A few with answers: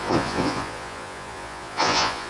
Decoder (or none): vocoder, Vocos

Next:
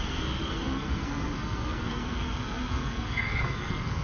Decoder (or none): codec, SNAC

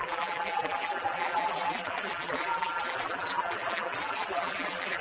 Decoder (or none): vocoder, BigVGAN v2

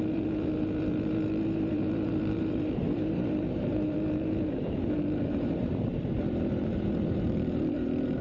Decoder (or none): vocoder, BigVGAN v2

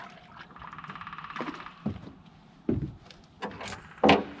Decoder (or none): none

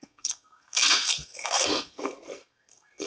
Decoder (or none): codec, SNAC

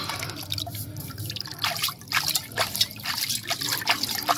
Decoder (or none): vocoder, BigVGAN v2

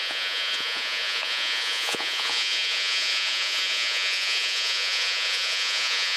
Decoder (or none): vocoder, Vocos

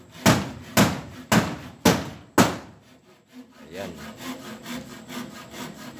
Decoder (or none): none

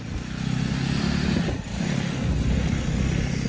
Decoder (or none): none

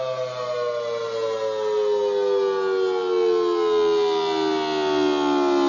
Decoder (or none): none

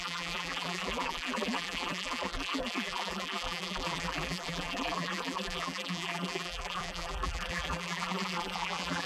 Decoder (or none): vocoder, BigVGAN v2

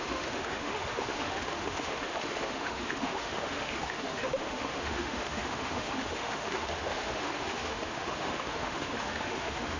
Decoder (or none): autoencoder, DAC-VAE